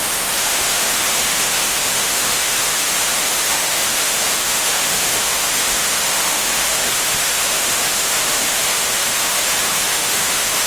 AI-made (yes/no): yes